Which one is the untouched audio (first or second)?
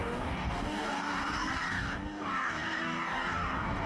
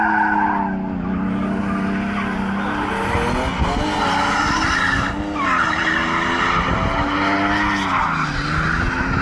second